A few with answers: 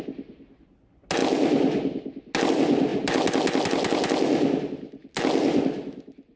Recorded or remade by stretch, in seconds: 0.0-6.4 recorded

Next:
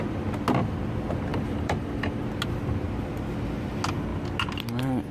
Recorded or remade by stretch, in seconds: 0.0-1.3 recorded; 1.3-2.2 remade; 2.2-5.1 recorded

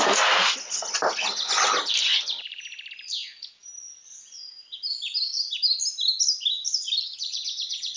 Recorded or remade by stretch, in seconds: 0.0-2.1 recorded; 2.1-2.9 remade; 2.9-6.6 recorded; 6.6-7.4 remade; 7.4-8.0 recorded